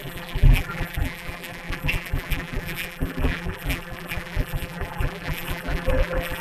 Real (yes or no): no